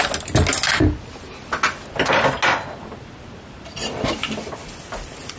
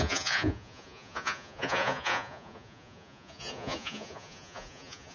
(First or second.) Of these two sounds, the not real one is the second